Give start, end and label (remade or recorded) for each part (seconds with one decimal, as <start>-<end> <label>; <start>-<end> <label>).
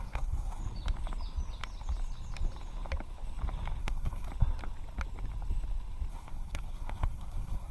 0.0-0.6 remade; 0.6-3.8 recorded; 3.8-4.3 remade; 4.3-6.1 recorded; 6.1-7.7 remade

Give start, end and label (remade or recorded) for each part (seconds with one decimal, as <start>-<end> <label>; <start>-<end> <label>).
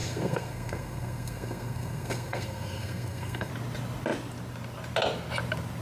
0.0-3.5 remade; 3.5-5.8 recorded